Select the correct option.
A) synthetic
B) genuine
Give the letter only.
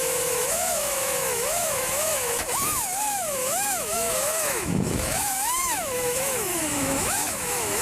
A